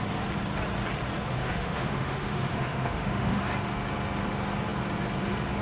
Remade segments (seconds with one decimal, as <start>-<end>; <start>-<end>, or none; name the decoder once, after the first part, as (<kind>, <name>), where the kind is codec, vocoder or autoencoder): 1.4-3.4 (autoencoder, DAC-VAE)